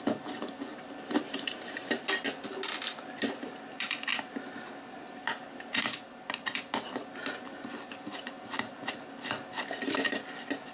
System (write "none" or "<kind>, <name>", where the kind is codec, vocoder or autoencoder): none